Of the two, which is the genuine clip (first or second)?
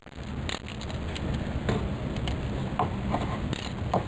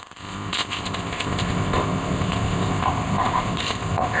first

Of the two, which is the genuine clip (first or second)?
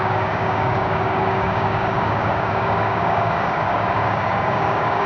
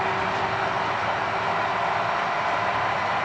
second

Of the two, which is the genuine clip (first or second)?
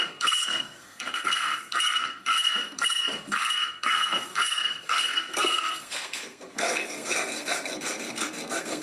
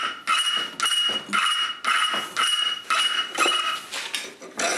second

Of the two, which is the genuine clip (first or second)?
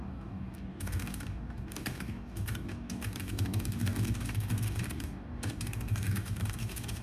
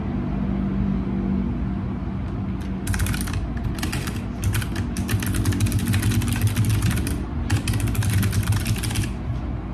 second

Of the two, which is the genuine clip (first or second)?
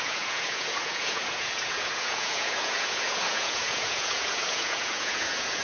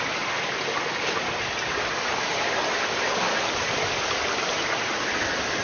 second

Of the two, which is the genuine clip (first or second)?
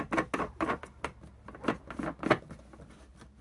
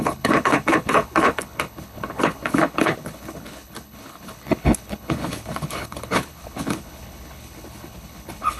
first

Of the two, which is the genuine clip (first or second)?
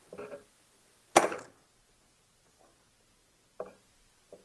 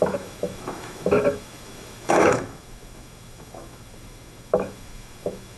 first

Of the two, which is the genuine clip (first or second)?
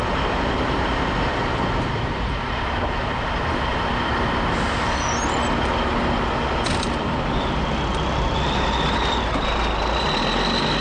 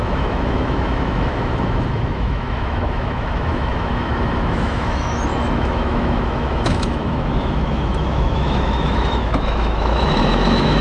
first